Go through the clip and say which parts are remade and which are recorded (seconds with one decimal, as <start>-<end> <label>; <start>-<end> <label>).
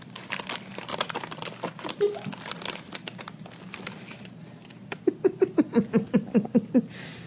0.0-7.3 recorded